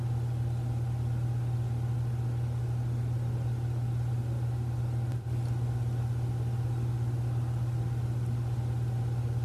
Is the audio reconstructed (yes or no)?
no